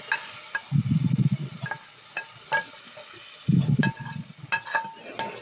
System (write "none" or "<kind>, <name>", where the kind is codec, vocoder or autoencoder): none